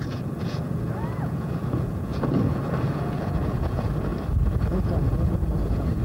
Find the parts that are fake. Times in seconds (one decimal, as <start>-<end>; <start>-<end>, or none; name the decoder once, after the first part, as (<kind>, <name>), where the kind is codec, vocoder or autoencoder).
0.0-4.1 (vocoder, Vocos); 4.6-6.0